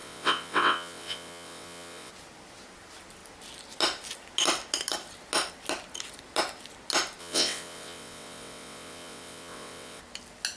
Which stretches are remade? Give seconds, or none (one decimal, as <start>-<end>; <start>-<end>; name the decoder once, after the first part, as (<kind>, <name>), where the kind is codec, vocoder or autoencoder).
0.0-2.1 (vocoder, WaveNeXt); 7.2-10.0